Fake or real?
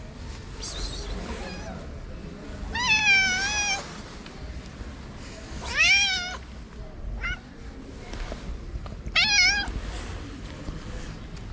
real